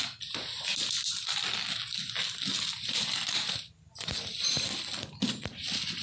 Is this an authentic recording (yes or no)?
yes